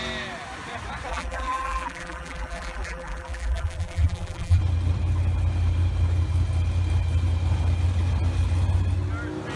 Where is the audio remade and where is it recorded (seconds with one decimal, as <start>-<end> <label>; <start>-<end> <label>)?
0.0-1.1 recorded; 1.1-4.6 remade; 4.6-9.6 recorded